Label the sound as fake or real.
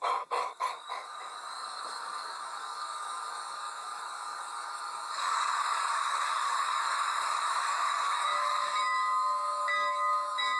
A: fake